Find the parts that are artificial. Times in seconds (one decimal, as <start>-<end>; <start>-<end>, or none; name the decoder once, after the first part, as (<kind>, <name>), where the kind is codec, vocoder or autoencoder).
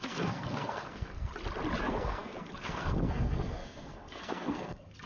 0.0-1.3 (codec, SNAC); 1.8-5.1